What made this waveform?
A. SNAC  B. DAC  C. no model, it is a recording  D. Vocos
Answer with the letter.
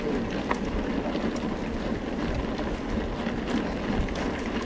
C